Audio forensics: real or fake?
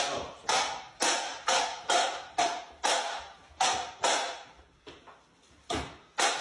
real